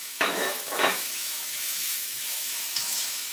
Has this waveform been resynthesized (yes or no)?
yes